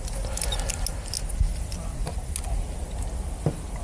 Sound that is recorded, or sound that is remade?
recorded